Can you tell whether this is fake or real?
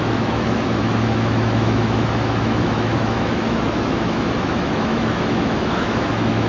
fake